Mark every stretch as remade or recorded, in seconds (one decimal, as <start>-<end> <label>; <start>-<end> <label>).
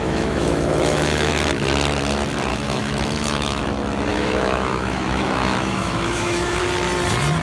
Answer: 0.0-1.3 remade; 1.3-2.5 recorded; 2.5-3.6 remade; 3.6-4.1 recorded; 4.1-6.6 remade; 6.6-7.4 recorded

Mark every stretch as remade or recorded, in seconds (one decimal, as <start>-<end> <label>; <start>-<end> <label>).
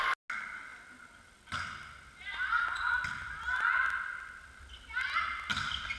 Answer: 0.0-6.0 recorded